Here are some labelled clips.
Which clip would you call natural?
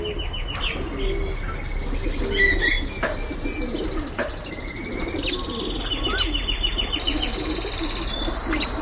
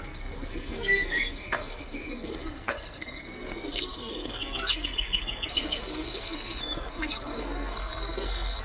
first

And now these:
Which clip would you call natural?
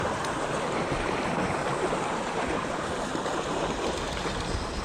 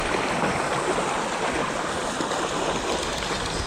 second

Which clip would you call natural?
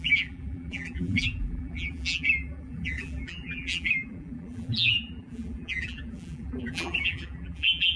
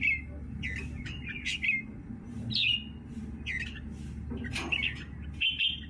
second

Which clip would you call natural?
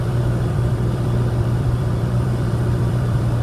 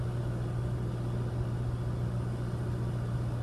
second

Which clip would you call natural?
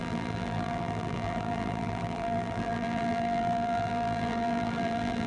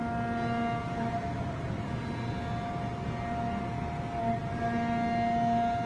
second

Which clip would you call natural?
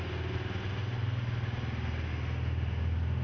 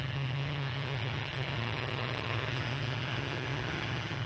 first